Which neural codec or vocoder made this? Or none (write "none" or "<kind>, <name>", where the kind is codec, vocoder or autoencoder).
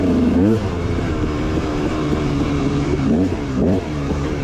vocoder, BigVGAN v2